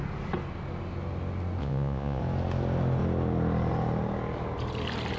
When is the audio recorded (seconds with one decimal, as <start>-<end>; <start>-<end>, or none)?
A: 0.0-1.6; 2.2-5.2